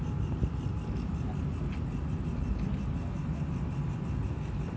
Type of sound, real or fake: real